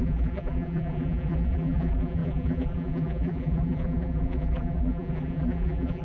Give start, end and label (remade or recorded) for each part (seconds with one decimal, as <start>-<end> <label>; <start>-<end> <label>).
0.0-6.0 remade